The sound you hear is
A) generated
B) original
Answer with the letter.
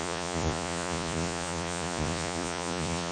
A